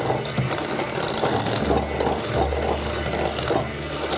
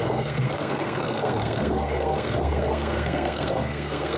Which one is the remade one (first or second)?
second